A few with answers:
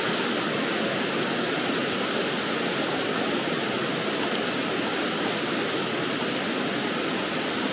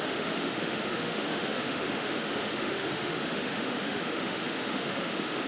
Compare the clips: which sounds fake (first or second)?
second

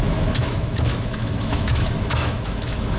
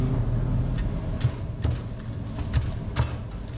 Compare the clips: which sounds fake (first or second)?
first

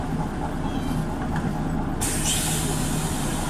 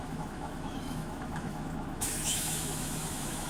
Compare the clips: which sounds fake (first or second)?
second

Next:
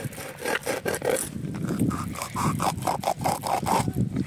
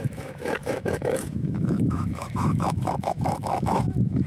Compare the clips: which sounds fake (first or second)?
second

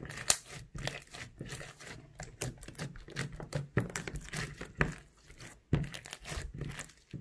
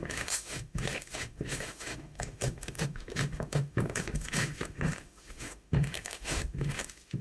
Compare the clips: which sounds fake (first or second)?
second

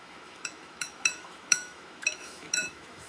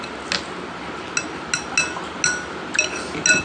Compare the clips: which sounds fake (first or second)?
first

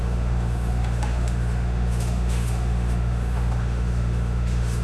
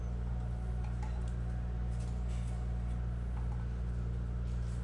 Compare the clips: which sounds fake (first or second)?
first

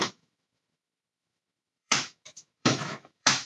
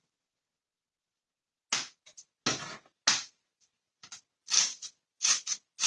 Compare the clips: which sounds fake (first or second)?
first